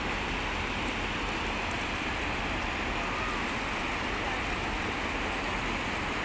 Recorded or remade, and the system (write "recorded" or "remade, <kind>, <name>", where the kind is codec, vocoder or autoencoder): recorded